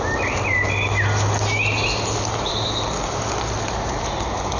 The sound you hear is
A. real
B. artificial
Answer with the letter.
A